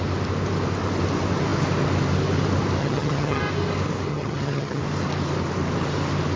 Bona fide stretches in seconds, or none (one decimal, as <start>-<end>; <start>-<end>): 0.0-2.8; 3.4-4.1; 4.8-6.4